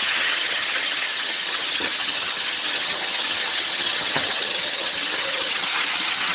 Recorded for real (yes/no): no